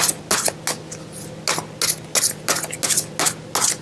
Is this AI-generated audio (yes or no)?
no